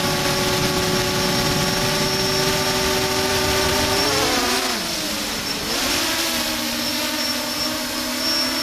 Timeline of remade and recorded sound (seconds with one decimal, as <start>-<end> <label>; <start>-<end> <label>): 0.0-3.3 recorded; 3.3-4.6 remade; 4.6-8.6 recorded